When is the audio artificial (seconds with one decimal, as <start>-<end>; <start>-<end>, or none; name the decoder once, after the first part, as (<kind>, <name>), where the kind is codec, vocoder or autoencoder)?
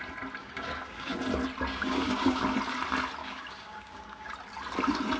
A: 0.4-1.2 (codec, DAC); 1.7-2.4; 3.2-4.3